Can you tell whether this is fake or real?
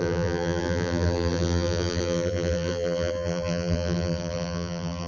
fake